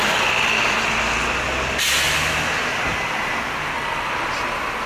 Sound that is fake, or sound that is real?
real